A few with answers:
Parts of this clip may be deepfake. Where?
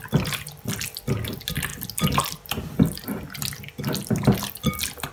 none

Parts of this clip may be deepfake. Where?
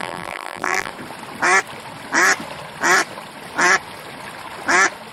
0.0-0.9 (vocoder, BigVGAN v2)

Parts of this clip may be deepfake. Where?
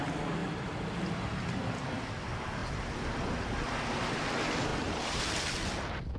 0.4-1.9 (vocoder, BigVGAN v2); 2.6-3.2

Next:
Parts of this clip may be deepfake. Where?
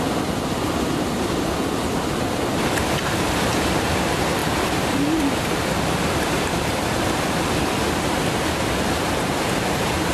none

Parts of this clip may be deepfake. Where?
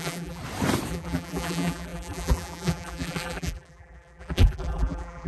0.0-0.4 (vocoder, BigVGAN v2); 0.9-5.3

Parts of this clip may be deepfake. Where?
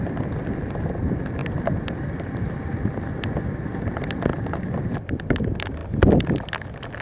1.4-3.0 (vocoder, BigVGAN v2); 4.3-5.1